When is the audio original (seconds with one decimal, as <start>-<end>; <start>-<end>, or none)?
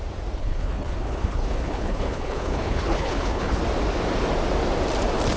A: 0.0-0.4; 3.6-5.4